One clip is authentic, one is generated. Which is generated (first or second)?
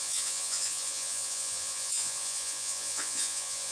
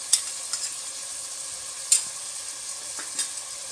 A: first